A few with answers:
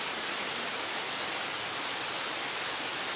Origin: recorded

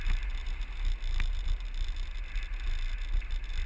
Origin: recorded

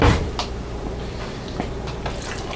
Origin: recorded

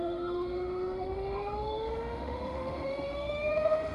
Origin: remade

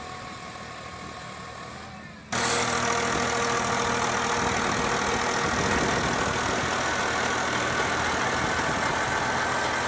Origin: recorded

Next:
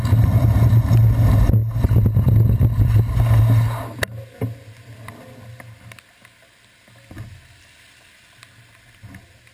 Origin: recorded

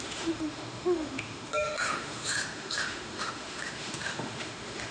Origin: remade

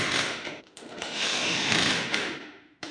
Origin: remade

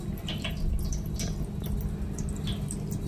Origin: recorded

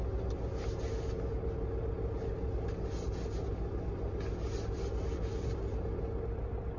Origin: recorded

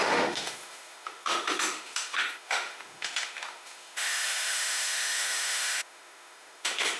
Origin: remade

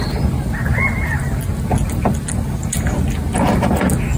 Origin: recorded